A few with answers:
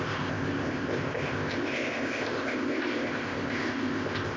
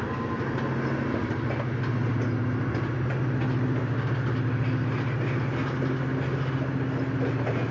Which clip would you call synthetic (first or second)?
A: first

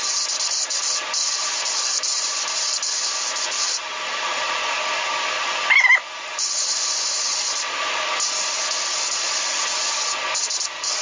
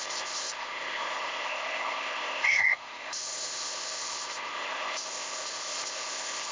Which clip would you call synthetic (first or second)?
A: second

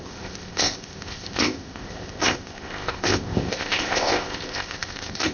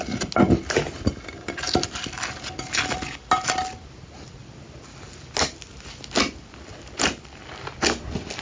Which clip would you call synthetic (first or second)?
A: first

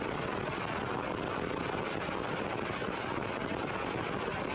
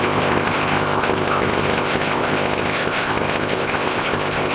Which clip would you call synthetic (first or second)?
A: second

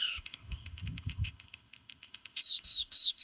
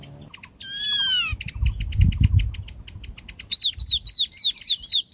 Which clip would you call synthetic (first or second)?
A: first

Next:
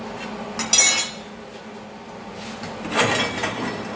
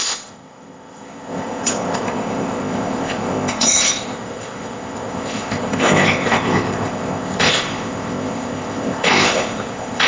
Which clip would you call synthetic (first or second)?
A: second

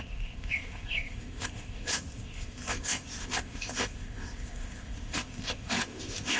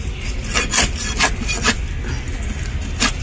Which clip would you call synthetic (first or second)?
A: first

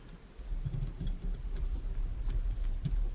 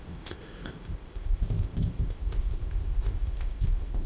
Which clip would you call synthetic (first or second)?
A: second